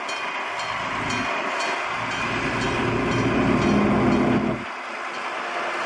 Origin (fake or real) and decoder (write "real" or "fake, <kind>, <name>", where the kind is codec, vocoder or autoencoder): real